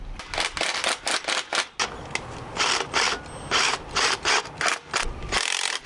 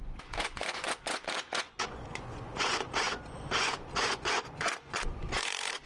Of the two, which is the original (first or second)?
first